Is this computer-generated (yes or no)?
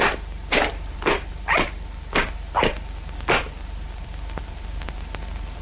no